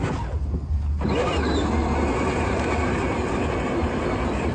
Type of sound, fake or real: real